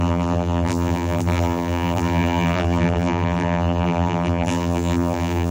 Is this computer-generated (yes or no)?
yes